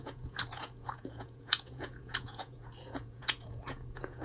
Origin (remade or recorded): remade